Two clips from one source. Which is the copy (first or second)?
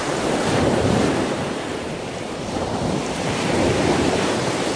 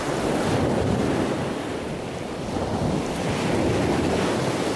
first